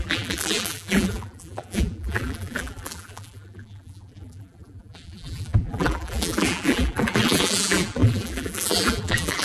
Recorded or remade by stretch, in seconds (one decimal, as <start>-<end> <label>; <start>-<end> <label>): 0.0-9.4 remade